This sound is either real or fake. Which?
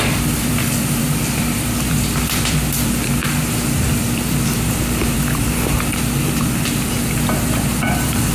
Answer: fake